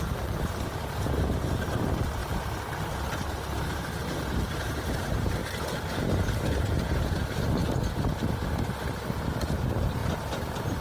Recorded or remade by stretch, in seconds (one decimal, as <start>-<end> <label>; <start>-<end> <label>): 0.0-2.2 remade; 2.2-3.7 recorded; 3.7-5.4 remade; 5.4-6.9 recorded; 6.9-7.6 remade; 7.6-9.5 recorded; 9.5-10.8 remade